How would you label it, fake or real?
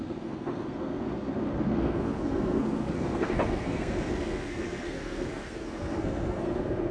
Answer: fake